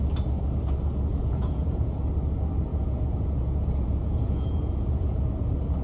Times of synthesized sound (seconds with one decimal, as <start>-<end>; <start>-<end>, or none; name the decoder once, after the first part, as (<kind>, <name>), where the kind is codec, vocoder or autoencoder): 1.1-2.0 (vocoder, Vocos); 2.7-5.3